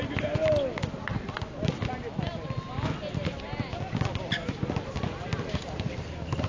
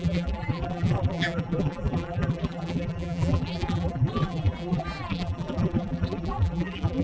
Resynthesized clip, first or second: second